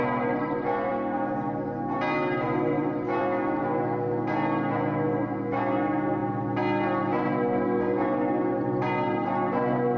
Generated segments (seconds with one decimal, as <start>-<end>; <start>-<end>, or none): none